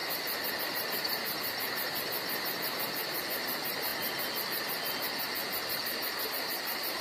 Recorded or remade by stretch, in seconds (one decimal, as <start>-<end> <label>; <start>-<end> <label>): 0.0-0.6 recorded; 0.6-3.9 remade; 3.9-6.3 recorded; 6.3-7.0 remade